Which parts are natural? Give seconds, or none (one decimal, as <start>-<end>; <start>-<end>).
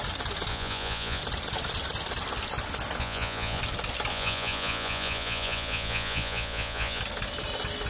0.0-0.5; 1.2-3.0; 3.6-4.1; 7.0-7.9